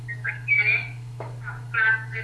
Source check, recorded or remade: remade